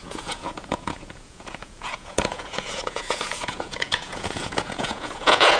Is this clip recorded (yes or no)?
no